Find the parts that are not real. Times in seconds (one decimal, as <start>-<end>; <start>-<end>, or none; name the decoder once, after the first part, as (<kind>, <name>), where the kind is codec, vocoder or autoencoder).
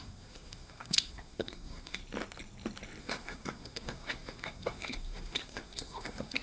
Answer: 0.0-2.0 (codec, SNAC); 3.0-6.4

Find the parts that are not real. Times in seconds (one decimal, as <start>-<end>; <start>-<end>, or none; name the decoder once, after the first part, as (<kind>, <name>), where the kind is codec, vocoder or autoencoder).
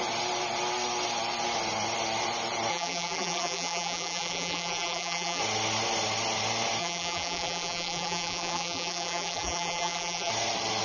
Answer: 2.7-5.4 (vocoder, BigVGAN v2); 6.8-10.3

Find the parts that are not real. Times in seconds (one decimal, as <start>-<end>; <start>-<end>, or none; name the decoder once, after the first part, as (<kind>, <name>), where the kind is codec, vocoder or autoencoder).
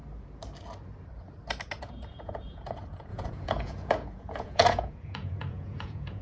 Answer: 1.8-6.2 (vocoder, Vocos)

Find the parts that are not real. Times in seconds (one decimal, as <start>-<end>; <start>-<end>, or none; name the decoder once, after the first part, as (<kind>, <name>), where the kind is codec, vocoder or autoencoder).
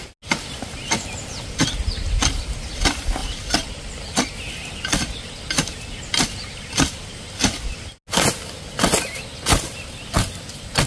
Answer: none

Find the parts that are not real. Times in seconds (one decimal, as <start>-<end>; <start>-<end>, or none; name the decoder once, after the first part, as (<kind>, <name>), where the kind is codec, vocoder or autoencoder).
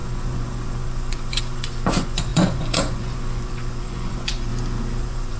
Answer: 0.0-4.5 (vocoder, Vocos); 5.0-5.4